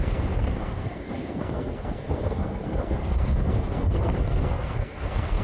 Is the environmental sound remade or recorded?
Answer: remade